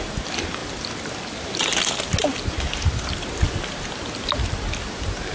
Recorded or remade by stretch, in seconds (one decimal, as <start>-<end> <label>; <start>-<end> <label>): 0.0-5.3 recorded